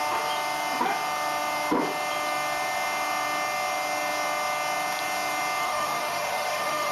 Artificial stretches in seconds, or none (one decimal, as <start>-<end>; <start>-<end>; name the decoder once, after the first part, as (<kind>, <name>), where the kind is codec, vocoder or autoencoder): 5.6-6.9 (autoencoder, DAC-VAE)